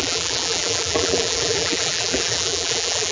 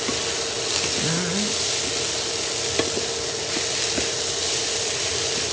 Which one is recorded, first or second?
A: second